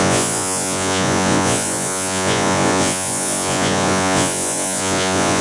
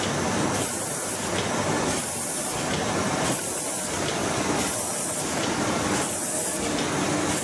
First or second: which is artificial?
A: first